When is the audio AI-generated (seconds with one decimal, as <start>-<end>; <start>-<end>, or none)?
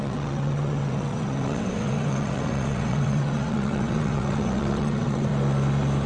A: 0.0-5.3